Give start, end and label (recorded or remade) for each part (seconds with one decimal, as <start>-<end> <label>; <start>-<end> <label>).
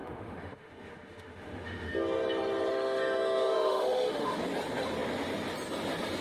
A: 0.0-1.9 remade; 1.9-2.7 recorded; 2.7-4.4 remade; 4.4-6.2 recorded